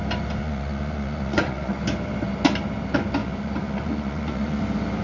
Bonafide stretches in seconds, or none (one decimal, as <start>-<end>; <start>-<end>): 0.0-0.4; 1.8-3.2; 4.6-5.0